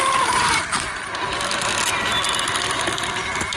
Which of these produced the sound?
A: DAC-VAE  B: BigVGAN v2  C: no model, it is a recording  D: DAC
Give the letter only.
C